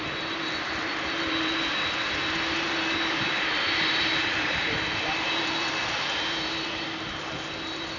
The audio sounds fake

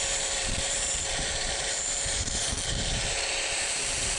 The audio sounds fake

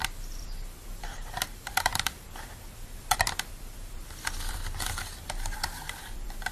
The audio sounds fake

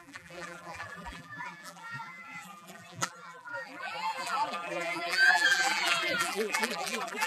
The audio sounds fake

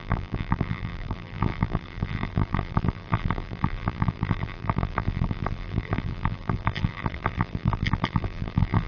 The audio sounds fake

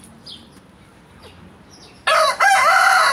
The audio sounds real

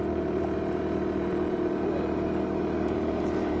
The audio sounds fake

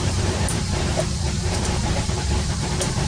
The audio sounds fake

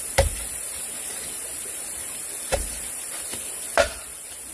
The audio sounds fake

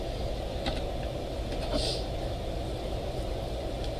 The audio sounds real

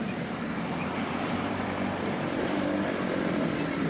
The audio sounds fake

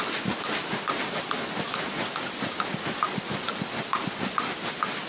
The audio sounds real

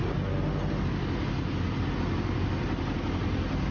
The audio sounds real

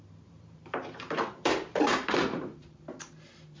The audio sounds fake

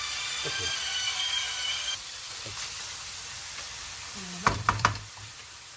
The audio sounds fake